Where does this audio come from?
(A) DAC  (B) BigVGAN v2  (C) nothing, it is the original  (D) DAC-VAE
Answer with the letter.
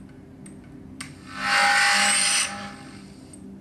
C